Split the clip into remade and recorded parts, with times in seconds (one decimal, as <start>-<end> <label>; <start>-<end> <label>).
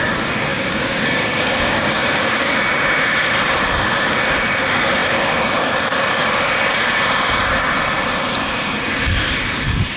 0.0-0.5 recorded; 0.5-2.5 remade; 2.5-10.0 recorded